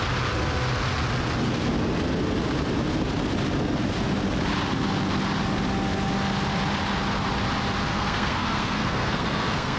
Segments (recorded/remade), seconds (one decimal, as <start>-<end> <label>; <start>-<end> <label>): 0.0-7.9 recorded; 7.9-9.8 remade